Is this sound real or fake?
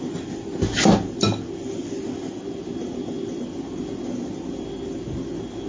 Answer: real